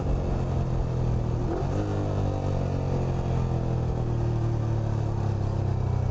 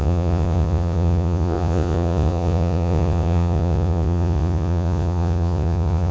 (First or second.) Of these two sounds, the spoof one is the second